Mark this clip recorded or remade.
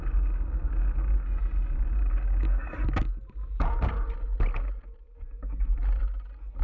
recorded